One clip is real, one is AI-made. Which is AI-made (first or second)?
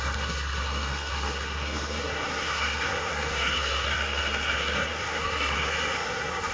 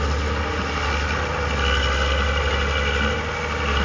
first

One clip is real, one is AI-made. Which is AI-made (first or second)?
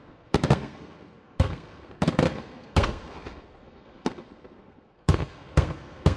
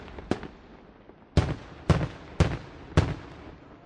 first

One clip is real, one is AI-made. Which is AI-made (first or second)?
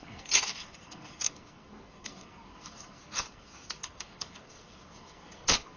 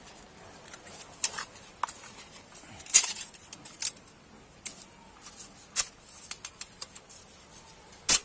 first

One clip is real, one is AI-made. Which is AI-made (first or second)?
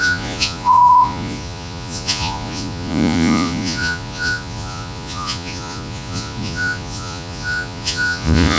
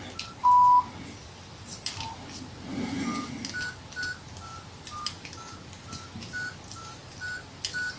first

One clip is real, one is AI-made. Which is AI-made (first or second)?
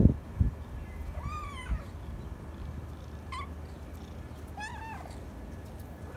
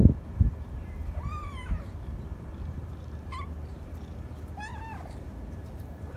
second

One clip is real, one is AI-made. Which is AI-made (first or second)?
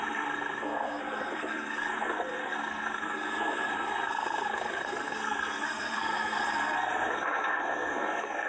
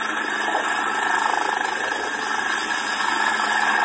first